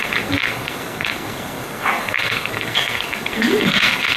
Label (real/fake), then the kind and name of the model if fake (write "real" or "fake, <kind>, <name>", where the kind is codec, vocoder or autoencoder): fake, codec, SNAC